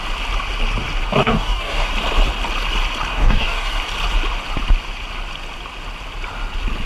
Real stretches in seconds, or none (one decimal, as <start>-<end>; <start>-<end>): 0.0-1.2; 1.9-3.1; 3.8-6.9

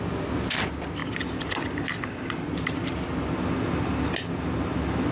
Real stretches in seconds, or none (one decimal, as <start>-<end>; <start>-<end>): 0.0-5.1

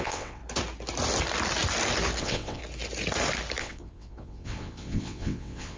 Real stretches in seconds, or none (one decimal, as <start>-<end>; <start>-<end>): 0.4-2.2; 2.6-3.6

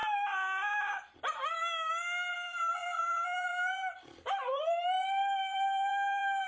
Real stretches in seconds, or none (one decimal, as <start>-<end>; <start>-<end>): 0.0-2.3

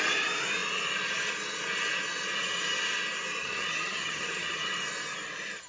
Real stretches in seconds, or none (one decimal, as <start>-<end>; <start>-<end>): 0.0-3.4; 4.7-5.7